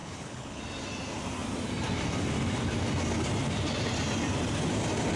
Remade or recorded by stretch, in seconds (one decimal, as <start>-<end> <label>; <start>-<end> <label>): 0.0-0.6 remade; 0.6-5.2 recorded